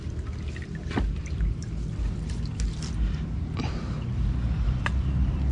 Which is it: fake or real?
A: real